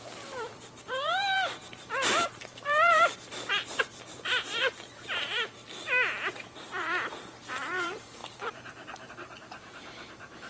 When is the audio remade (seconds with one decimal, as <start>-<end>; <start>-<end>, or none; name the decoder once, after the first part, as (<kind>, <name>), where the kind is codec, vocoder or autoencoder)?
0.0-10.5 (vocoder, BigVGAN v2)